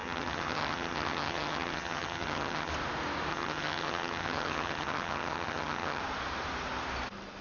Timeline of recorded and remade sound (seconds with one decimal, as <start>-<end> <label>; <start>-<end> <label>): 0.0-2.7 remade; 2.7-3.3 recorded; 3.3-6.0 remade; 6.0-7.4 recorded